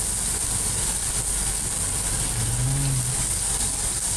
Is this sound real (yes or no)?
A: yes